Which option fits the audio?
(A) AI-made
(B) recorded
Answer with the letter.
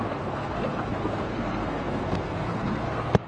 A